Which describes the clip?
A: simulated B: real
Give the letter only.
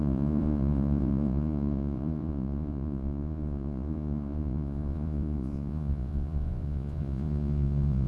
A